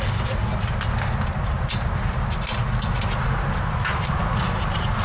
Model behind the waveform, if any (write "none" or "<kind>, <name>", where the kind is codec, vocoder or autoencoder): none